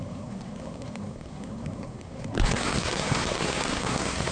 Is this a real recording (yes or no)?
no